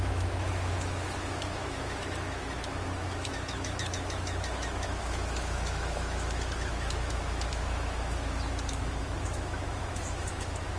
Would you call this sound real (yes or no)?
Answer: no